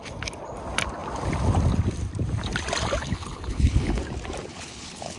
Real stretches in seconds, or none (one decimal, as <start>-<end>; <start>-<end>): 0.0-3.0; 4.0-4.5